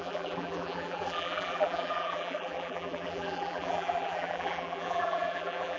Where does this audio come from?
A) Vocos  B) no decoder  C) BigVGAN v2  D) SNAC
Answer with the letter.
C